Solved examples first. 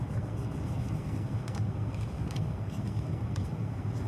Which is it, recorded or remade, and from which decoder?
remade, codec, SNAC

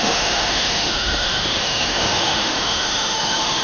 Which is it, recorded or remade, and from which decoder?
remade, autoencoder, DAC-VAE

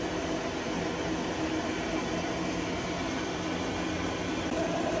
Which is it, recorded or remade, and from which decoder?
recorded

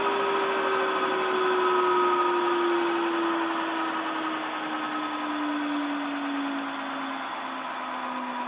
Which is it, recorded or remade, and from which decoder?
recorded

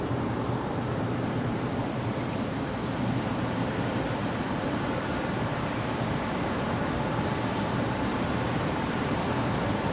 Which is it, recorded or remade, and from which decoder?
remade, vocoder, BigVGAN v2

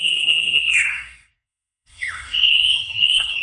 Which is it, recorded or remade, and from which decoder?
remade, codec, SNAC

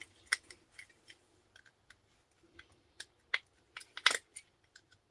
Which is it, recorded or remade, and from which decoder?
recorded